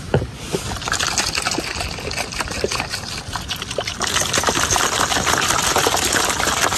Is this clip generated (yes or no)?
no